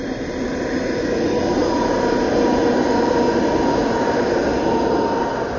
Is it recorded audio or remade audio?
recorded